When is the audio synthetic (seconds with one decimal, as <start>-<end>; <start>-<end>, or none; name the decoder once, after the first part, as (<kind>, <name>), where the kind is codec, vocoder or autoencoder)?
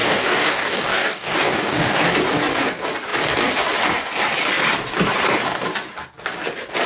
0.0-2.0 (codec, DAC)